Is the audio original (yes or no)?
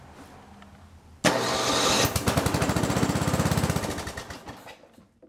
yes